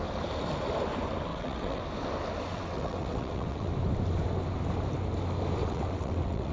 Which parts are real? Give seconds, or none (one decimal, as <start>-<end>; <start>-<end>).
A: 0.0-1.3; 1.8-2.5; 3.7-5.6